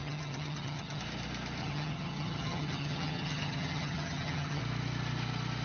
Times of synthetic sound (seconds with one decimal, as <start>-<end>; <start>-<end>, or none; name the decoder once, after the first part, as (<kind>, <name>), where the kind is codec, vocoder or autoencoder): 0.0-1.0 (vocoder, HiFi-GAN); 1.6-4.6